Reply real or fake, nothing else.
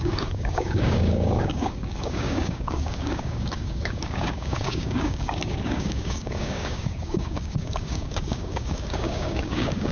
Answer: fake